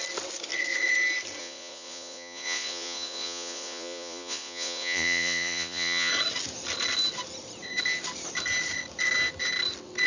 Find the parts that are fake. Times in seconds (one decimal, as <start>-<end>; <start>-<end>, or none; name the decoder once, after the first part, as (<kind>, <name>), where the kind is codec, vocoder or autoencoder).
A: 1.4-6.1 (vocoder, Vocos)